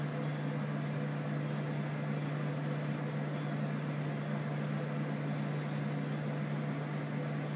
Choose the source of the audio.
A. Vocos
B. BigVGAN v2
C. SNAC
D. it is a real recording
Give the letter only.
D